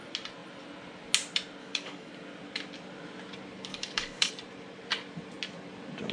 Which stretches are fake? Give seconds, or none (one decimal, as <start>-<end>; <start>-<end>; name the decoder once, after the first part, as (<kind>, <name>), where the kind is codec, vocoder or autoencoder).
1.6-2.1 (codec, DAC); 3.7-4.3